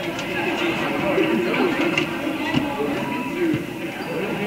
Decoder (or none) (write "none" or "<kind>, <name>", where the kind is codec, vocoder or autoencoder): none